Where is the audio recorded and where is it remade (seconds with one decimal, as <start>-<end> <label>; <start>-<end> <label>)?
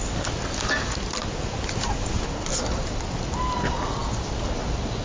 0.0-5.0 recorded